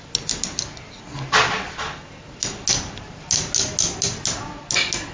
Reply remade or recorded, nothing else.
recorded